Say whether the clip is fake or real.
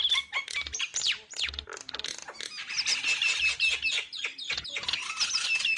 real